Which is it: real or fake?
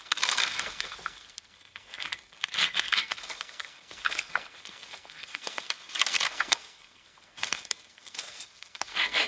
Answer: fake